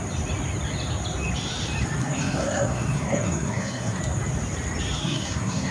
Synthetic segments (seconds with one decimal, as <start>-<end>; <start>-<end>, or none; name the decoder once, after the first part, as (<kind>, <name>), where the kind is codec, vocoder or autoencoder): 2.0-4.0 (codec, SNAC); 5.0-5.7